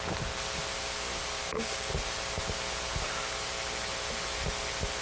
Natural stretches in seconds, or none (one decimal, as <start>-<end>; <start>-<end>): 0.0-1.4; 1.9-5.0